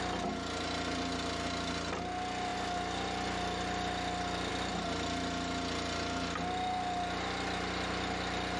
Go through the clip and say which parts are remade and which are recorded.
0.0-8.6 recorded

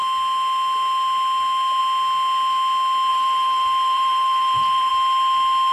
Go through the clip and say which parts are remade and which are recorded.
0.0-3.1 recorded; 3.1-4.9 remade; 4.9-5.7 recorded

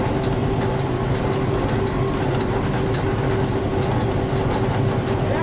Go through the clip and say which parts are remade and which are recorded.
0.0-5.4 recorded

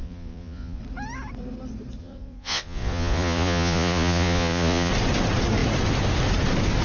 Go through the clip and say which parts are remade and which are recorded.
0.0-0.8 remade; 0.8-2.0 recorded; 2.0-4.9 remade; 4.9-6.8 recorded

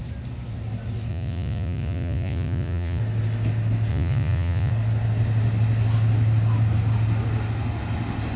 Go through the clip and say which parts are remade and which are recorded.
0.0-1.1 recorded; 1.1-3.0 remade; 3.0-3.9 recorded; 3.9-4.7 remade; 4.7-8.4 recorded

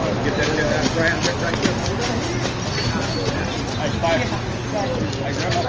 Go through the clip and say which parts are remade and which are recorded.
0.0-5.7 recorded

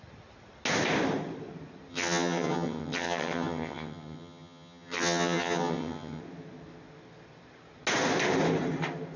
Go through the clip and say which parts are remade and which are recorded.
0.0-1.9 recorded; 1.9-6.2 remade; 6.2-9.2 recorded